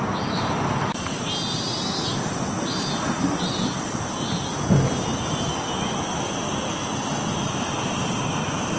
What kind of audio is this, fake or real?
real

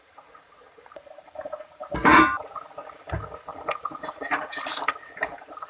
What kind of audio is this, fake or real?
fake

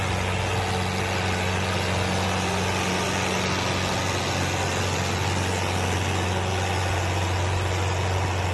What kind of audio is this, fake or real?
real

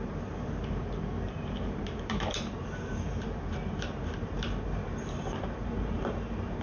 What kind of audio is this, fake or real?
fake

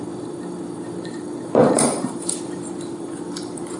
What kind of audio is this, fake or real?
fake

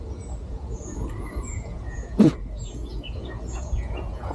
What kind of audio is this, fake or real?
fake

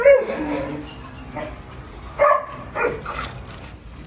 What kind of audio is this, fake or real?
real